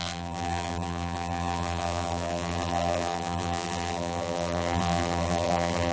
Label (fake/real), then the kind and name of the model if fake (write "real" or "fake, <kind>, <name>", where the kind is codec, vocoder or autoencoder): fake, vocoder, BigVGAN v2